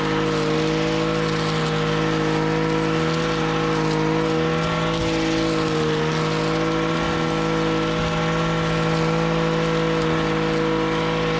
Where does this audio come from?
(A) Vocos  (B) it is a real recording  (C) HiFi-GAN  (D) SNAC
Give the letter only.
B